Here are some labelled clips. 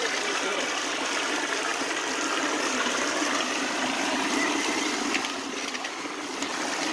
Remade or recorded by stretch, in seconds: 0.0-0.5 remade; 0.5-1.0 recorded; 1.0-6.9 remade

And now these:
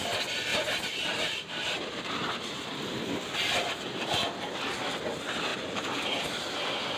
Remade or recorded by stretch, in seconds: 0.0-0.5 recorded; 0.5-4.3 remade; 4.3-5.5 recorded; 5.5-6.4 remade; 6.4-7.0 recorded

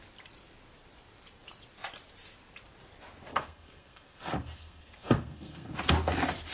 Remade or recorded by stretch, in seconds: 0.0-3.3 recorded; 3.3-5.7 remade; 5.7-6.5 recorded

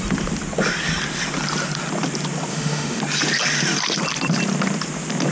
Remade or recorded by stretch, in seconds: 0.0-2.5 recorded; 2.5-3.0 remade; 3.0-5.3 recorded

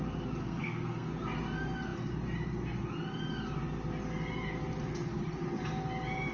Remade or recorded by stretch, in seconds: 0.0-0.4 recorded; 0.4-1.1 remade; 1.1-6.3 recorded